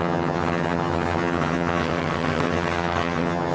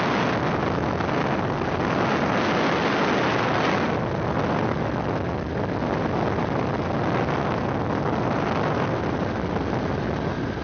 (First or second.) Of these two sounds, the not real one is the first